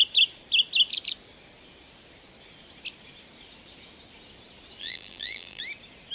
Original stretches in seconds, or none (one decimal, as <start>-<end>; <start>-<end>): 0.0-4.8; 5.6-6.1